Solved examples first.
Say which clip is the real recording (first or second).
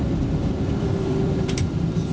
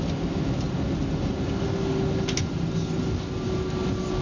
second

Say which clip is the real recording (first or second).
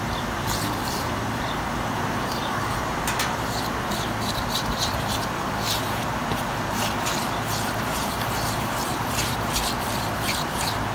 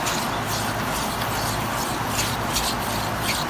second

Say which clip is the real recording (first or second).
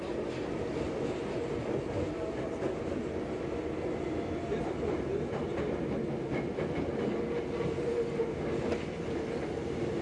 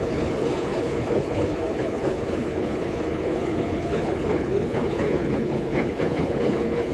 first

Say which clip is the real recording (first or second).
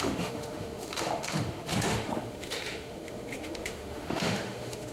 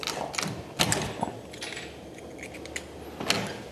second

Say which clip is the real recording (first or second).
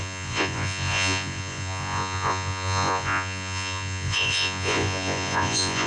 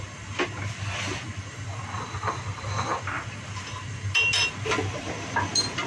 second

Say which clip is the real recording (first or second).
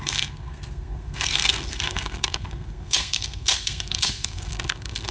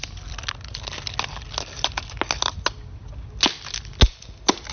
second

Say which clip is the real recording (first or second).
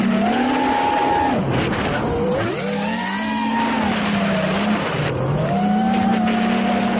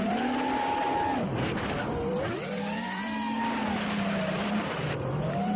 first